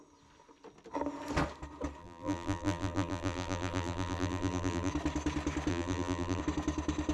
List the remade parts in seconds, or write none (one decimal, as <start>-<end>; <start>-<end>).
2.0-4.9; 5.7-6.4